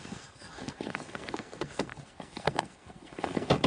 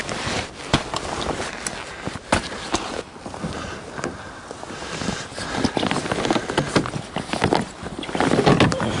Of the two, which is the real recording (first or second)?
second